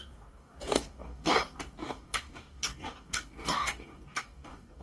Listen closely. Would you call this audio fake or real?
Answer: fake